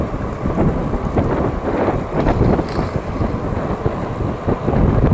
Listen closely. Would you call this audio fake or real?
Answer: real